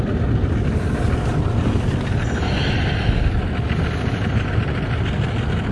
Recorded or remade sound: recorded